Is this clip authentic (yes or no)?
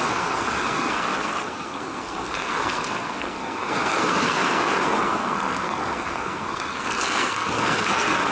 no